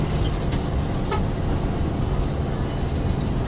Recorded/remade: recorded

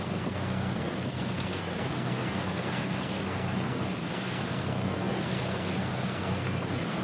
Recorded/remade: remade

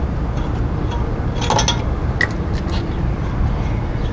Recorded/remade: recorded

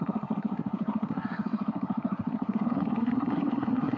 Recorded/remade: remade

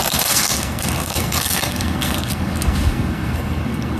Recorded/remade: remade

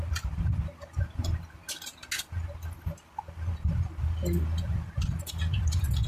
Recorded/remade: recorded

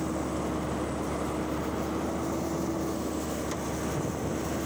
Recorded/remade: recorded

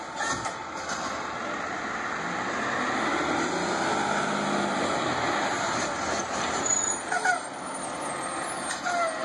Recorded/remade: recorded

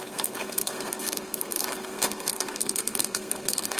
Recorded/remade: remade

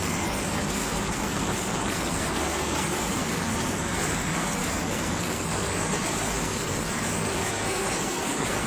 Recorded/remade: remade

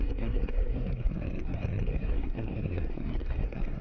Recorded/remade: remade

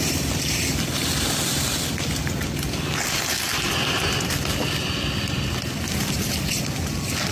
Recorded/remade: recorded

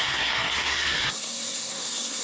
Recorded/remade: remade